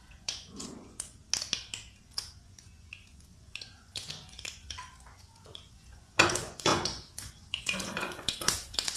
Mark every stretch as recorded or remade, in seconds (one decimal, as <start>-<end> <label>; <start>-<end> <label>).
0.0-1.2 remade; 1.2-2.0 recorded; 2.0-9.0 remade